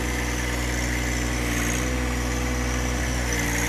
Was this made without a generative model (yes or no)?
yes